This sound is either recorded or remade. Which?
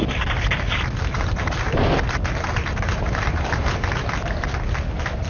recorded